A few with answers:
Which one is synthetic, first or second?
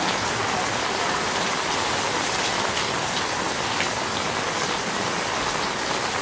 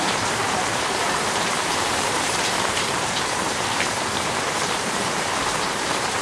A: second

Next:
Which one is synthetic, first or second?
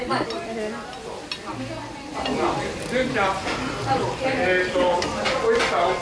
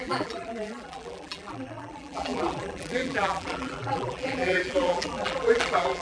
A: second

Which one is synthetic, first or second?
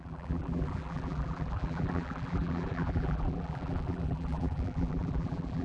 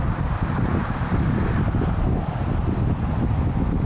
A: first